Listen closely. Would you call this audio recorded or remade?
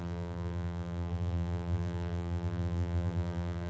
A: remade